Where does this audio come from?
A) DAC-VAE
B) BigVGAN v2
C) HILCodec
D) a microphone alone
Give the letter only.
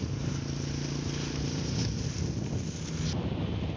D